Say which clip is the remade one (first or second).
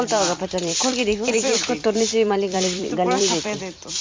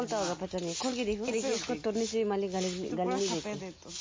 first